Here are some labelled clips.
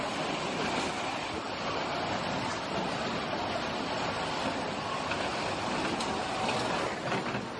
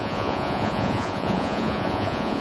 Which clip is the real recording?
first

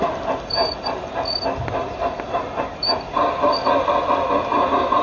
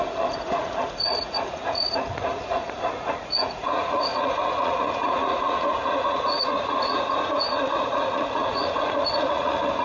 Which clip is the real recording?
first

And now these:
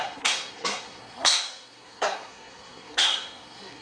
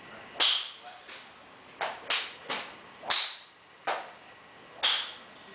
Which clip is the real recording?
second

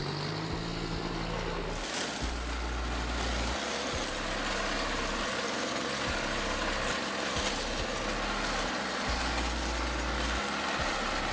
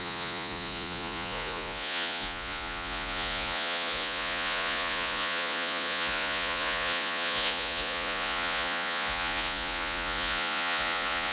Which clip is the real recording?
first